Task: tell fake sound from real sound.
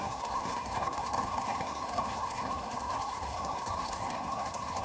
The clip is fake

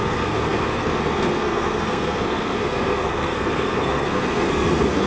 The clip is fake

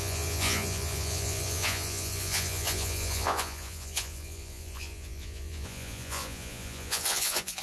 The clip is fake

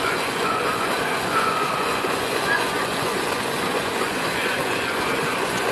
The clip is fake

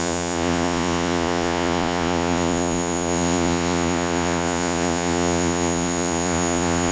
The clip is fake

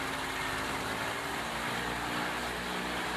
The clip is real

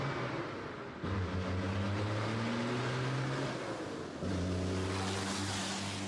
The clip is real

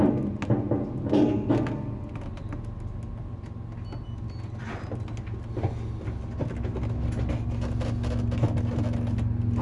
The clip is real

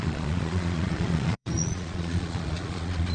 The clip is fake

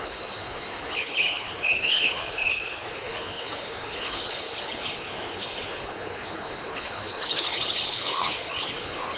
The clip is fake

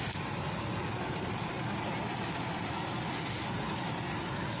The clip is real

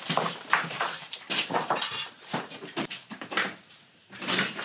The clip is fake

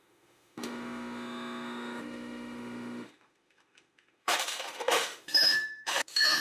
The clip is fake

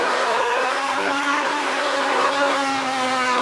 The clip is fake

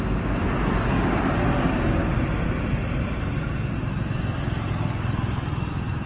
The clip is real